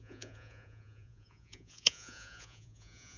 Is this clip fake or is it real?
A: fake